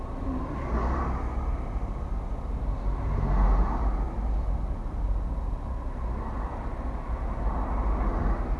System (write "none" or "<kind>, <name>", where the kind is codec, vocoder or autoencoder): none